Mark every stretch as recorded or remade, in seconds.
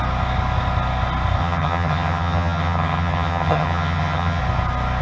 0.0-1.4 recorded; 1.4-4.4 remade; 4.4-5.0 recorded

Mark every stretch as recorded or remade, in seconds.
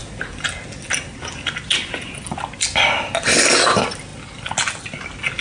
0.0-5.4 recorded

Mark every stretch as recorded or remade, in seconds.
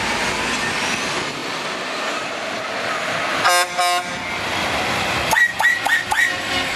0.0-6.8 recorded